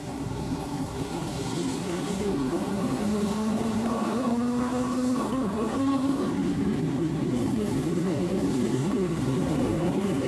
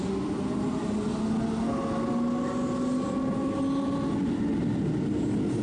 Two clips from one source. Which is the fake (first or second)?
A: first